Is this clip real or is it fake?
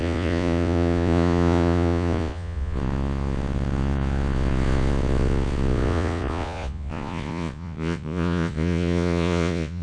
fake